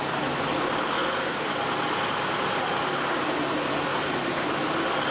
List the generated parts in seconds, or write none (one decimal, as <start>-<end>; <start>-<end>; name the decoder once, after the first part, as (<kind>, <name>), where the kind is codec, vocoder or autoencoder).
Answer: 3.9-4.5 (vocoder, BigVGAN v2)